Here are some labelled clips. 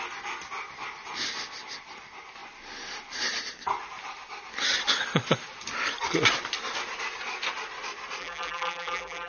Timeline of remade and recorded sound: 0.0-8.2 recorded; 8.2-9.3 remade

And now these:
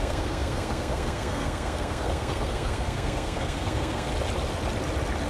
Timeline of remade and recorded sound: 0.0-4.1 remade; 4.1-5.3 recorded

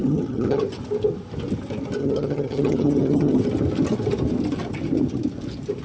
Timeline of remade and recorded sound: 0.0-0.6 remade; 0.6-2.0 recorded; 2.0-3.4 remade; 3.4-5.8 recorded

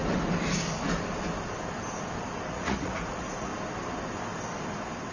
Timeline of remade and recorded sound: 0.0-2.5 recorded; 2.5-3.5 remade; 3.5-5.1 recorded

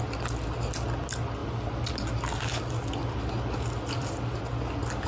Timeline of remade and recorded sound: 0.0-5.1 recorded

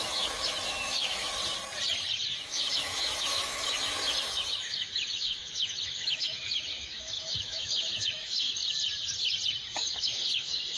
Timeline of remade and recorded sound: 0.0-1.4 remade; 1.4-2.4 recorded; 2.4-8.6 remade; 8.6-9.6 recorded; 9.6-10.8 remade